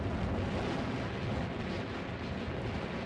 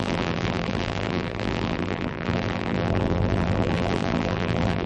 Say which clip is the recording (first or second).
first